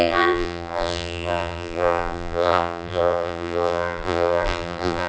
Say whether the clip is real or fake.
fake